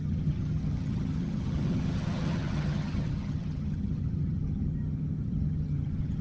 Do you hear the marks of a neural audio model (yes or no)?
yes